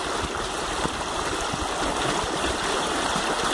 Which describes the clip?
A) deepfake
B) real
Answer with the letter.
B